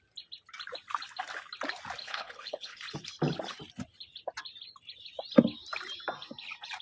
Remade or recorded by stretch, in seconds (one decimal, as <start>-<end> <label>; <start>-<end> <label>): 0.0-2.0 recorded; 2.0-2.8 remade; 2.8-6.8 recorded